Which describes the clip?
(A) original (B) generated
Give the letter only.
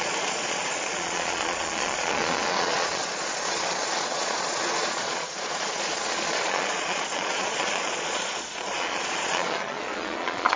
B